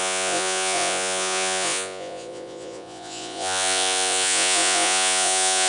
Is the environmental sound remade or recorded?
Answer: remade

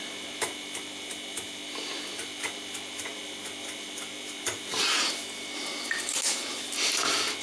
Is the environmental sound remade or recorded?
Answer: recorded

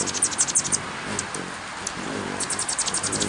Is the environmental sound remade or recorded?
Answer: recorded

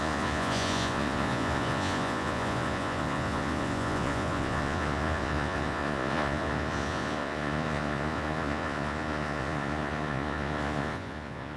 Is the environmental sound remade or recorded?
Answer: remade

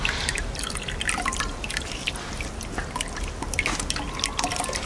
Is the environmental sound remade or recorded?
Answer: recorded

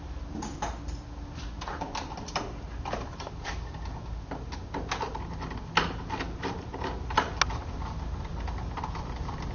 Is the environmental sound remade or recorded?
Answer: recorded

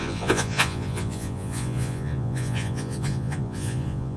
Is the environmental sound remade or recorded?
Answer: remade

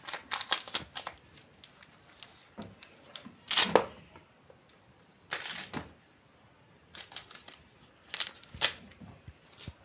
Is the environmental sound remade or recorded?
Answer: recorded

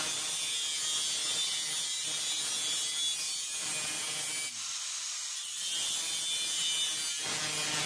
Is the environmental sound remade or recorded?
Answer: recorded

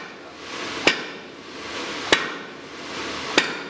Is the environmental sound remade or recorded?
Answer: recorded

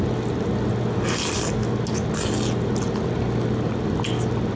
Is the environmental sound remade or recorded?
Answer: recorded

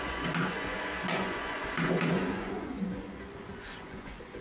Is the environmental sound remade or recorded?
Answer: remade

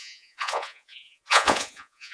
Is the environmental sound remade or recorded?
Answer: remade